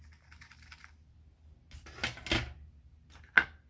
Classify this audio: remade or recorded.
recorded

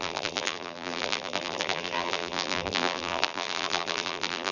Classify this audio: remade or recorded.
remade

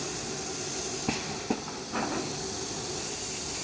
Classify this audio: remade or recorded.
remade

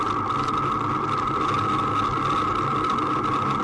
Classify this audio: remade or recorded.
recorded